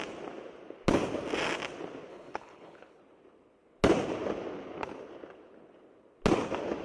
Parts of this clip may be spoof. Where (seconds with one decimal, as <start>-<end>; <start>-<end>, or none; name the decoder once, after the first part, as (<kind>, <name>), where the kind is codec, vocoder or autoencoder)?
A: 2.1-3.0 (codec, HILCodec)